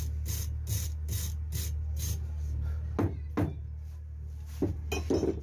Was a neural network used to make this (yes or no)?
no